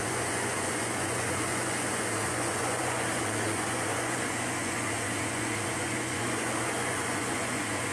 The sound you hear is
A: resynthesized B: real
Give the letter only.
A